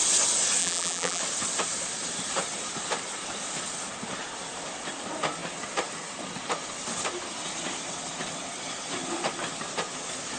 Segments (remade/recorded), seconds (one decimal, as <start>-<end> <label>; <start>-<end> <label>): 0.0-0.6 recorded; 0.6-1.2 remade; 1.2-10.4 recorded